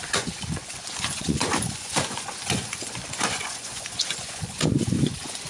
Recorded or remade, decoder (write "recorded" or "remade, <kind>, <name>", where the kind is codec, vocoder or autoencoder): remade, vocoder, Vocos